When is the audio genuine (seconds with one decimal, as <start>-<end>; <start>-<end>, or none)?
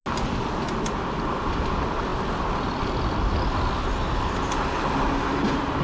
0.0-5.8